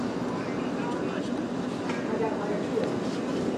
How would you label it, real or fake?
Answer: real